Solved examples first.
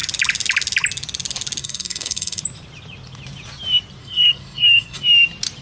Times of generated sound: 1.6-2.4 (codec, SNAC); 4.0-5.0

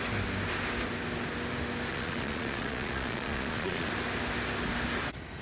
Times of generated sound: 1.9-3.9 (vocoder, Vocos)

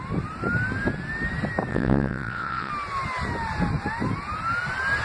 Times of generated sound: 1.7-2.7 (vocoder, WaveNeXt)

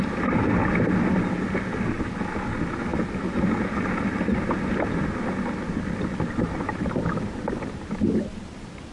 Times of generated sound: none

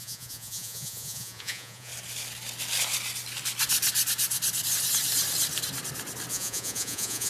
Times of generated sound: 0.0-1.9 (vocoder, Vocos); 6.3-7.3

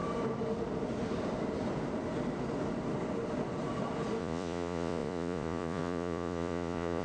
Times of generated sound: 4.2-7.0 (vocoder, Vocos)

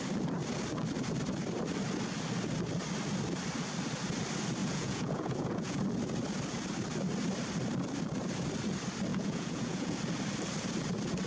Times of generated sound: 4.6-5.8 (vocoder, Vocos); 9.1-10.0

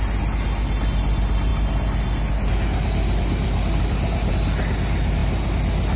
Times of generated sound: none